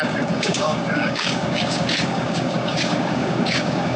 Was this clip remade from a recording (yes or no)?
yes